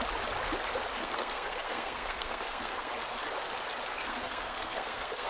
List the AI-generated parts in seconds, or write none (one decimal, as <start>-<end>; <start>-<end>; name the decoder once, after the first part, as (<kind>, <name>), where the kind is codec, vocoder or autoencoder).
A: 1.0-2.9 (codec, SNAC); 3.9-5.3